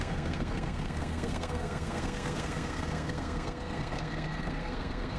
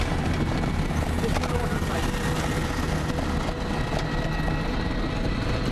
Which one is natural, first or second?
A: second